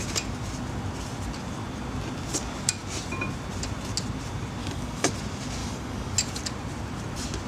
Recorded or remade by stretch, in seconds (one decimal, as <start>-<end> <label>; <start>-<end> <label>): 0.0-4.6 recorded; 4.6-5.1 remade; 5.1-5.6 recorded; 5.6-6.1 remade; 6.1-7.5 recorded